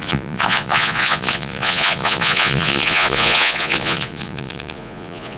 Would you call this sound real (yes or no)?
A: no